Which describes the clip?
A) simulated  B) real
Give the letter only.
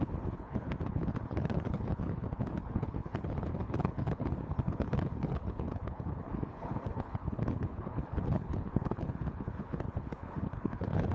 A